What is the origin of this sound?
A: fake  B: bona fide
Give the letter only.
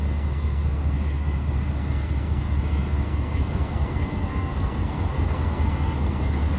A